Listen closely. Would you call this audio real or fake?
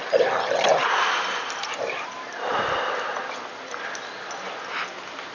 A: fake